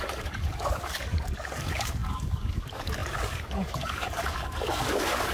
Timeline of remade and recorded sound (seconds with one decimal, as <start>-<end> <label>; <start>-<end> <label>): 0.0-5.3 remade